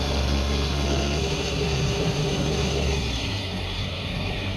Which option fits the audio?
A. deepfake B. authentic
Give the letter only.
A